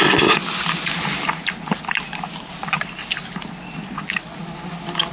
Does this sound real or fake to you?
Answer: real